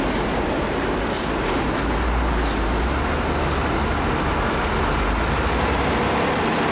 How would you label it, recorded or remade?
recorded